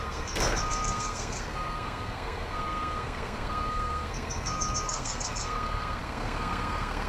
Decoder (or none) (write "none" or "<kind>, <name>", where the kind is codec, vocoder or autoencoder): codec, SNAC